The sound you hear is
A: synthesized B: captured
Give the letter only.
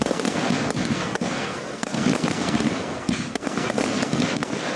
A